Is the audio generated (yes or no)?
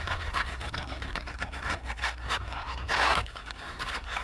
yes